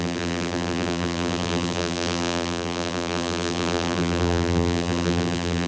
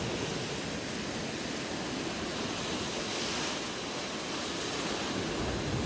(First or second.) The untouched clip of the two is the second